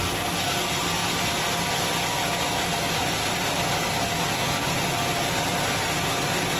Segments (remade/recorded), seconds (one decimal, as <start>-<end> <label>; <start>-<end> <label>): 0.0-6.6 recorded